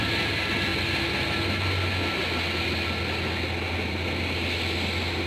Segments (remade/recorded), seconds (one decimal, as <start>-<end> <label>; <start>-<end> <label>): 0.0-5.3 recorded